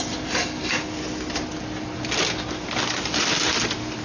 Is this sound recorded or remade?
recorded